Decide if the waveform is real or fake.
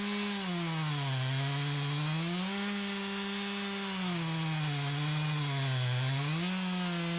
real